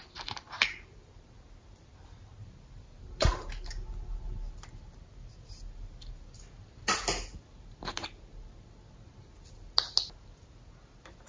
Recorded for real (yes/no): yes